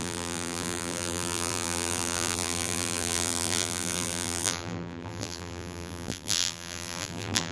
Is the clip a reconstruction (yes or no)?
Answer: yes